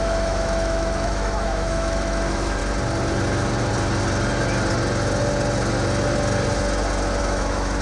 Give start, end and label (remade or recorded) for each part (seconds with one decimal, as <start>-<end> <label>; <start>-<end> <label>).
0.0-2.6 remade; 2.6-7.2 recorded; 7.2-7.8 remade